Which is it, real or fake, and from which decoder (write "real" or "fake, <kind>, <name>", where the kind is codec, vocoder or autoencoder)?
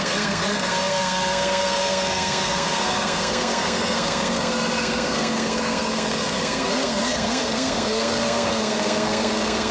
fake, codec, SNAC